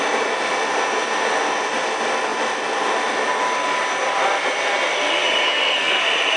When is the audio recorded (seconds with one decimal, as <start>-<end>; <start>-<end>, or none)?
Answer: 0.0-5.4; 6.0-6.4